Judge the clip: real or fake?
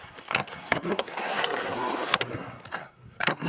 fake